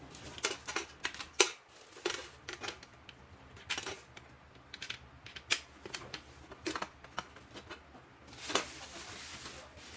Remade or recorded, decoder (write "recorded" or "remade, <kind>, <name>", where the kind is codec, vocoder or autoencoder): recorded